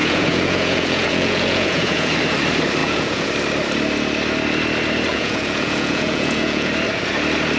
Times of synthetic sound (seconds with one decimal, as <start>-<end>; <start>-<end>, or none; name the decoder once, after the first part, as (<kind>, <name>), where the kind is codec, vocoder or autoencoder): 0.0-2.1 (vocoder, Vocos); 2.8-3.3; 5.1-6.7

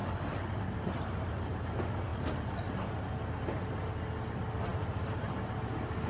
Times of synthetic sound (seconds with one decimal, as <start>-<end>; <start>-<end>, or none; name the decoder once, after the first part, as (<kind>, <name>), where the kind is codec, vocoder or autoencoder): none

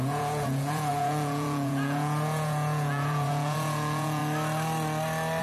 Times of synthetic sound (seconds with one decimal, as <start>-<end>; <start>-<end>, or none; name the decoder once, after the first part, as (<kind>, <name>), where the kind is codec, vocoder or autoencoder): 0.0-4.2 (vocoder, Vocos)